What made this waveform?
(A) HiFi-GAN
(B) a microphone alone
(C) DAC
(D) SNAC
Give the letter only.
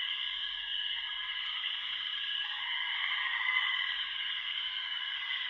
C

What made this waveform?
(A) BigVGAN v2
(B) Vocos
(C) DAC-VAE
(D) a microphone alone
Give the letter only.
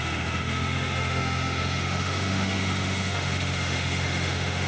C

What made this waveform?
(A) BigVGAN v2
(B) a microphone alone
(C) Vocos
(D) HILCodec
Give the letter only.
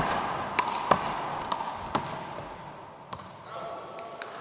B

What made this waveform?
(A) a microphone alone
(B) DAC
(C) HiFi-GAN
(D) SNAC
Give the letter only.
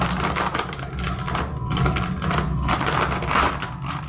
A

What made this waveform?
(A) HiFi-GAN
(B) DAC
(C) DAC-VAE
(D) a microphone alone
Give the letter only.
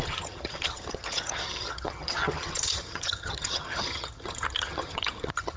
A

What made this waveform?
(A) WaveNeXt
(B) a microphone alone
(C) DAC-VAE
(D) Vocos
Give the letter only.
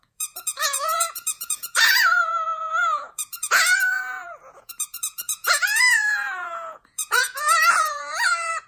D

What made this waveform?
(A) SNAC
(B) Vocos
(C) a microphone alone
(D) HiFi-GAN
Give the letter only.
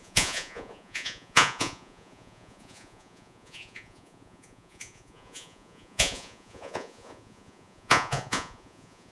B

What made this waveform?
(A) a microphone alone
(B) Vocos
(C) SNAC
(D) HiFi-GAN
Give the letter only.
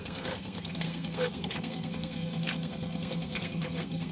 C